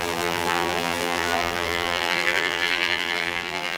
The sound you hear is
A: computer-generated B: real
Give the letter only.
A